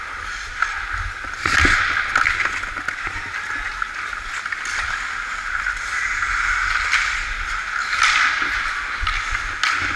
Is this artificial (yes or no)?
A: no